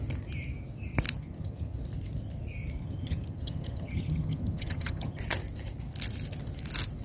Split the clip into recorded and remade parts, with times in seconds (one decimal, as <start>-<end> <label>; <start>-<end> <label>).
0.0-1.2 recorded; 1.2-1.8 remade; 1.8-2.8 recorded; 2.8-5.2 remade; 5.2-7.0 recorded